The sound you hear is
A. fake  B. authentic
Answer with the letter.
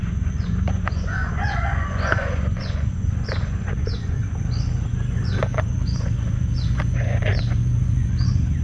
A